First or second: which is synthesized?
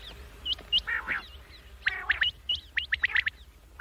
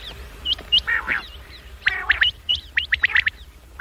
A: second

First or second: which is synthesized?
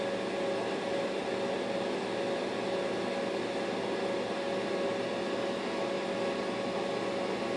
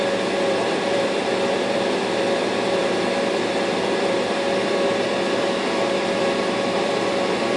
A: second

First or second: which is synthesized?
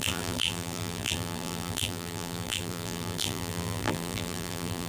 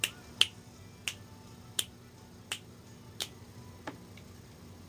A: first